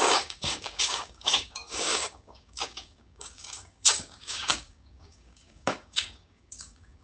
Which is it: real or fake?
fake